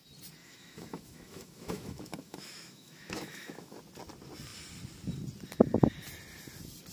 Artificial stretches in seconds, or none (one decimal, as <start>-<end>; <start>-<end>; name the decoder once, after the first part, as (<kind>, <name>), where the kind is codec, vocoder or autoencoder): 0.4-3.8 (autoencoder, DAC-VAE)